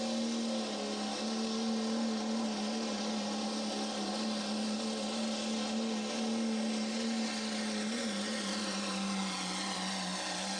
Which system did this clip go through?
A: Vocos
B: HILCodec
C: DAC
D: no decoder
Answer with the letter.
D